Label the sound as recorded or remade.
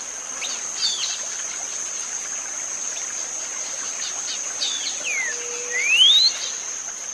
recorded